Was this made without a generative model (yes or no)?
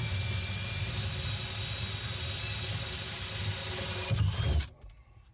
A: yes